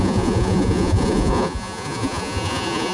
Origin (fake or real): fake